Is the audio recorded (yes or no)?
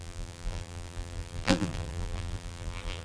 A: no